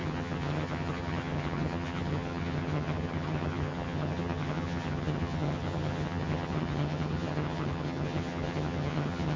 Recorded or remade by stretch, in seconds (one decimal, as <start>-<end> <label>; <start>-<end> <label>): 0.0-9.4 remade